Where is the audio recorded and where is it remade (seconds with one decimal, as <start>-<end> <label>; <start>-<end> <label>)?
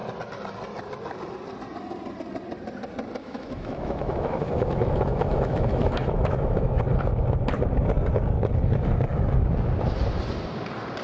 0.0-3.2 recorded; 3.2-6.8 remade; 6.8-11.0 recorded